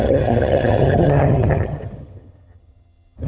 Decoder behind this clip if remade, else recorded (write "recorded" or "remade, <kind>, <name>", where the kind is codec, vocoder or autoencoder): remade, vocoder, HiFi-GAN